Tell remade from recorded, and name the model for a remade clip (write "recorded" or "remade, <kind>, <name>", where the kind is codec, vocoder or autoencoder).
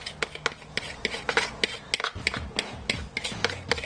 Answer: recorded